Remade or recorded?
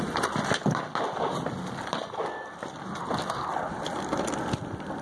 recorded